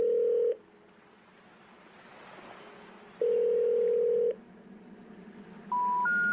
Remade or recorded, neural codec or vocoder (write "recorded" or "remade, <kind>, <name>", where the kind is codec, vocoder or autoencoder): recorded